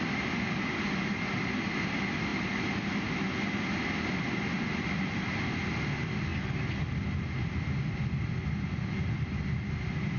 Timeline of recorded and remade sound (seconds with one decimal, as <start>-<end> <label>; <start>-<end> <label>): 0.0-10.2 recorded